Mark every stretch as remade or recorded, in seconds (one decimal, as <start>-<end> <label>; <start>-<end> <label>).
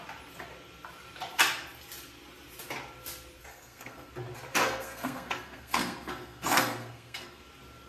0.0-3.5 recorded; 3.5-4.1 remade; 4.1-4.6 recorded; 4.6-7.4 remade; 7.4-7.9 recorded